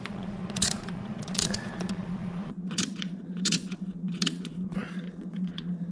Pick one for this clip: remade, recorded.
remade